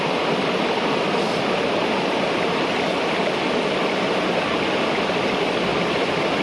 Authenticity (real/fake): real